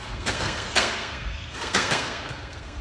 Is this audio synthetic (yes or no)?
yes